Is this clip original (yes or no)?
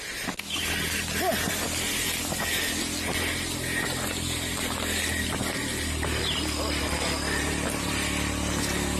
yes